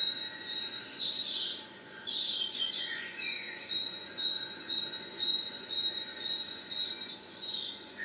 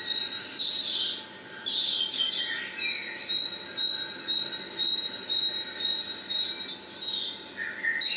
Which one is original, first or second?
second